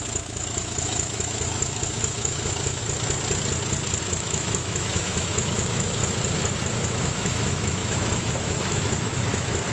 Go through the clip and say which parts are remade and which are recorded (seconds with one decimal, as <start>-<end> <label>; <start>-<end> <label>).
0.0-2.8 remade; 2.8-4.0 recorded; 4.0-6.0 remade; 6.0-6.7 recorded; 6.7-9.7 remade